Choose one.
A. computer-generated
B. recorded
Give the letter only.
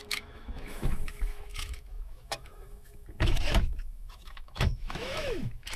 A